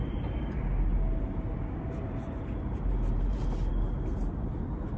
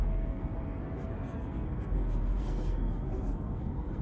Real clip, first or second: first